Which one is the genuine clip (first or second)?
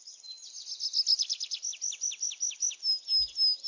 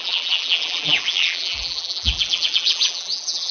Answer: first